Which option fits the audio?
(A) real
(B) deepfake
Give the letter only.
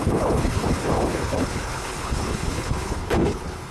B